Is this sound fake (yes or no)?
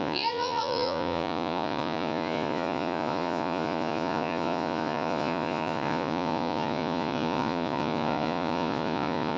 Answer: yes